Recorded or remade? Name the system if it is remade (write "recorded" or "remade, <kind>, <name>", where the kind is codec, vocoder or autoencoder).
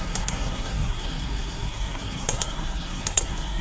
remade, codec, SNAC